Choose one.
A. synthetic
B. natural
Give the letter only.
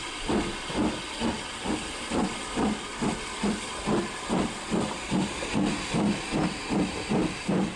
B